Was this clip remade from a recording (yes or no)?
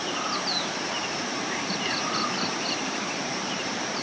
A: yes